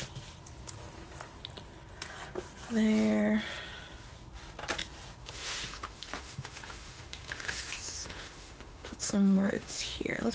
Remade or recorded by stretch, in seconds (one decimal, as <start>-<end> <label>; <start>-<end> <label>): 0.0-5.2 recorded; 5.2-10.3 remade